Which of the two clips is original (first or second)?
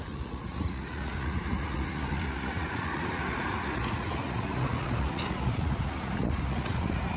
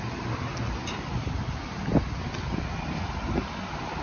second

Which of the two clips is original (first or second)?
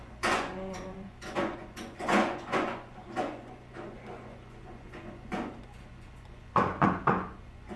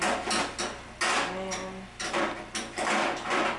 second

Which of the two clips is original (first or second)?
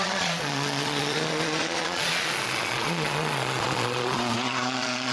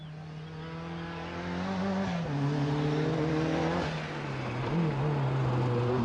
second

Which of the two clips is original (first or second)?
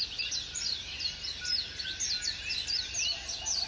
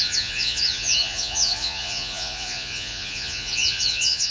first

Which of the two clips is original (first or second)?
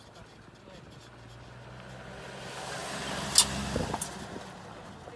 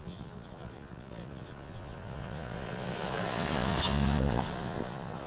first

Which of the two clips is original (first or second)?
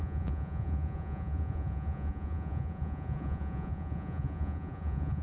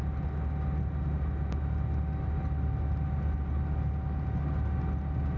second